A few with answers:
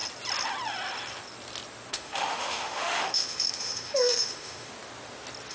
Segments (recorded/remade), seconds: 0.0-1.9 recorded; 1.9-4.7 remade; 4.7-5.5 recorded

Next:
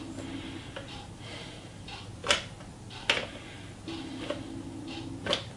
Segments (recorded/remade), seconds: 0.0-5.6 recorded